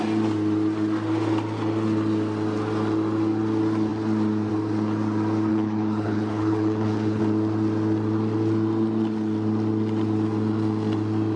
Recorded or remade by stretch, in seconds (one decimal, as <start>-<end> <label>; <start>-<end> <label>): 0.0-5.5 recorded; 5.5-7.2 remade; 7.2-11.4 recorded